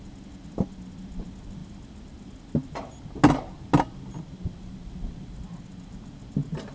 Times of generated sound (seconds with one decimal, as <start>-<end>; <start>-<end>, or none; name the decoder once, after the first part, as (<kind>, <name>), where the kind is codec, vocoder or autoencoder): none